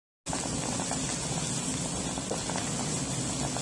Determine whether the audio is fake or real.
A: real